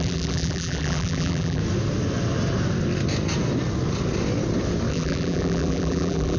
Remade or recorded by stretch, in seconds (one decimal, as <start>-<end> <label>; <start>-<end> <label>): 0.0-1.6 remade; 1.6-4.9 recorded; 4.9-6.4 remade